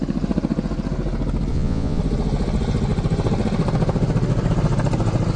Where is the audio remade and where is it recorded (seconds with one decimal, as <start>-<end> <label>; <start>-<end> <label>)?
0.0-1.5 recorded; 1.5-2.0 remade; 2.0-5.4 recorded